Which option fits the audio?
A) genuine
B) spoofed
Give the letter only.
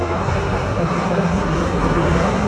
B